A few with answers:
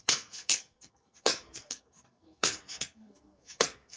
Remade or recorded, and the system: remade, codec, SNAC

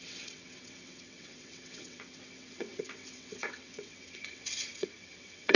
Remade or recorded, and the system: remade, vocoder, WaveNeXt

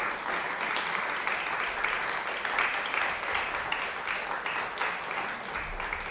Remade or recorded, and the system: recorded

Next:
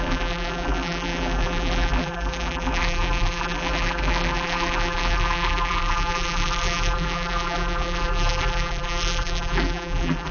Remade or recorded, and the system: remade, vocoder, BigVGAN v2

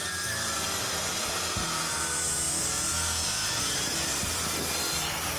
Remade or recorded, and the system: remade, vocoder, BigVGAN v2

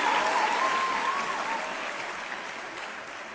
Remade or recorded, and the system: recorded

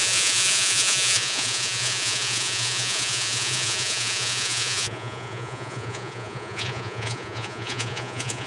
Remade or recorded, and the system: remade, vocoder, Vocos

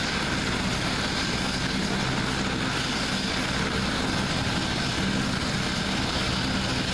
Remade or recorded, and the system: recorded